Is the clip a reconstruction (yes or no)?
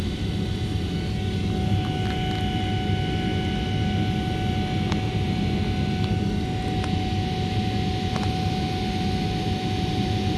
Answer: no